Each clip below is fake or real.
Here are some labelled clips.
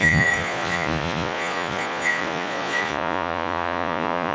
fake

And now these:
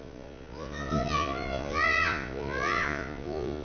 fake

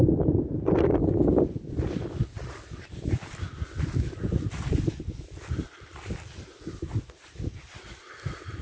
real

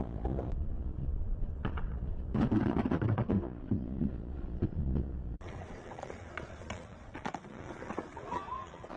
fake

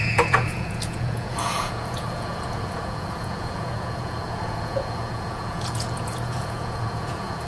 fake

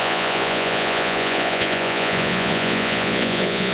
fake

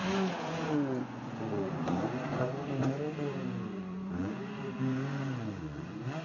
fake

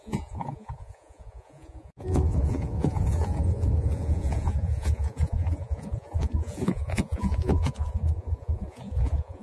fake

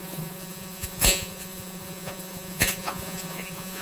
fake